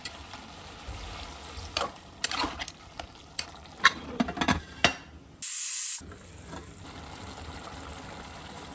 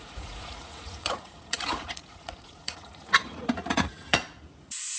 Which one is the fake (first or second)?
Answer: second